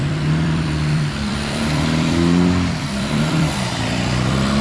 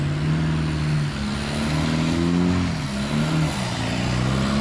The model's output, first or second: first